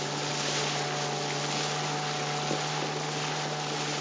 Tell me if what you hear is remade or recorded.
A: recorded